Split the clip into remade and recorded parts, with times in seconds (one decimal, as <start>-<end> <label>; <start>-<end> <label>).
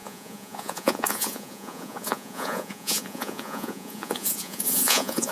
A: 0.0-5.3 remade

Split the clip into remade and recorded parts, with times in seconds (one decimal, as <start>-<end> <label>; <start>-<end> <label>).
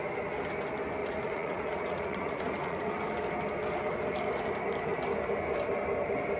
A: 0.0-1.0 recorded; 1.0-3.0 remade; 3.0-6.4 recorded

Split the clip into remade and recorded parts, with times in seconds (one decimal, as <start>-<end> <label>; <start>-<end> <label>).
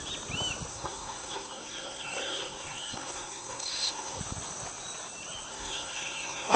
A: 0.0-0.7 recorded; 0.7-4.2 remade; 4.2-5.5 recorded; 5.5-6.6 remade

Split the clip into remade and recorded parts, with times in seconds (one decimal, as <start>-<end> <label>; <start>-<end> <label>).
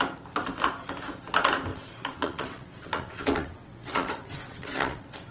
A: 0.0-1.7 recorded; 1.7-5.3 remade